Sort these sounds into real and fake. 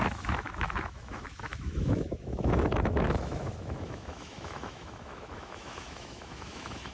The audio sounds fake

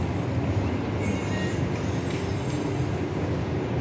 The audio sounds real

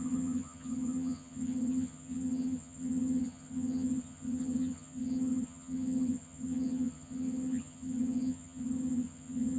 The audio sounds fake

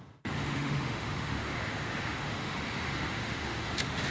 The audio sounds fake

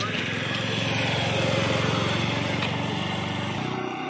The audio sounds real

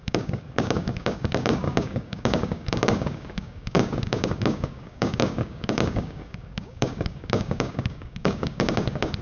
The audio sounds fake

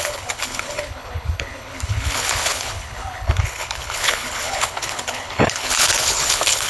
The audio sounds fake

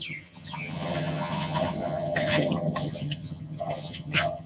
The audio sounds fake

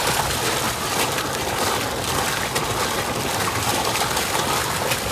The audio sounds real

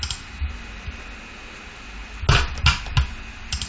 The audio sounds real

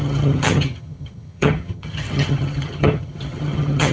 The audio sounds fake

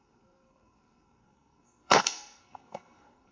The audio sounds fake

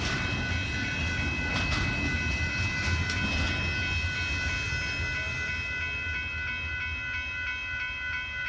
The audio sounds real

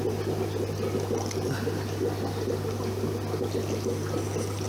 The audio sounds real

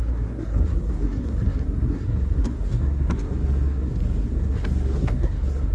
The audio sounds fake